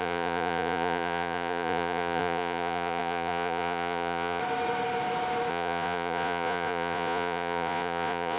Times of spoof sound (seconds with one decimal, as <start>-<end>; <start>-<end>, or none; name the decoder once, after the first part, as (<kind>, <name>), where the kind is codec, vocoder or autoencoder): 0.0-4.4 (vocoder, Vocos); 5.5-8.4

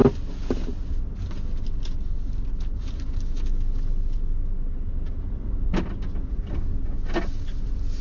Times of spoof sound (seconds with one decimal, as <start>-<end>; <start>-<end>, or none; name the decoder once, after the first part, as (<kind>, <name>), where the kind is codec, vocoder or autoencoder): none

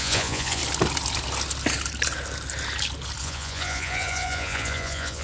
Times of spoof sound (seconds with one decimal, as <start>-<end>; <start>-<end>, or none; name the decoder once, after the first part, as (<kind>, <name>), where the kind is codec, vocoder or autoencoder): 0.0-0.6 (vocoder, Vocos); 3.2-5.2

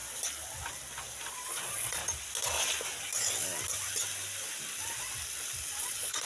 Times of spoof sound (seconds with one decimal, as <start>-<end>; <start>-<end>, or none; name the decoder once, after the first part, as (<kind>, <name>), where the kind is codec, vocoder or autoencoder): 1.3-2.0 (vocoder, Vocos); 5.8-6.3

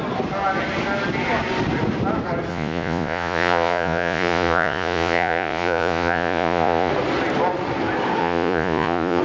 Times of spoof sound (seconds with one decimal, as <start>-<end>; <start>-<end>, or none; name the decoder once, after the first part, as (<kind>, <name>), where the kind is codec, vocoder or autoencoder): 2.5-6.9 (vocoder, Vocos); 8.2-9.2

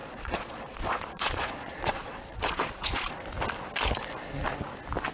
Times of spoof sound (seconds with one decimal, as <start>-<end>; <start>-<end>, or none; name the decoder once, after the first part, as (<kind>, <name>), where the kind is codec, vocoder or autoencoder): 0.0-3.1 (vocoder, Vocos)

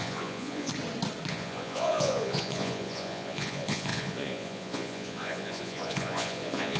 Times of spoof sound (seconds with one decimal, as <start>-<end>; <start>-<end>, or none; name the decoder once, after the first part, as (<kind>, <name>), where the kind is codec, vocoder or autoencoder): 0.0-0.7 (vocoder, Vocos); 1.3-6.8

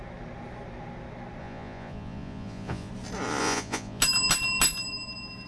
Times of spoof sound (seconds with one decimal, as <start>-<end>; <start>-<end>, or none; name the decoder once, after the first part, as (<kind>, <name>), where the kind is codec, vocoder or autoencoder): 1.4-2.9 (vocoder, Vocos); 3.4-4.0